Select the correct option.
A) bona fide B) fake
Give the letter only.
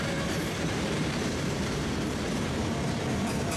B